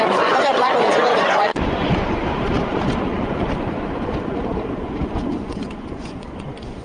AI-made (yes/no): yes